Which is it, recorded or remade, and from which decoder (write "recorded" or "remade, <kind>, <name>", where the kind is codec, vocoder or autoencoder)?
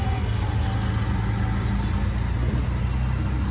recorded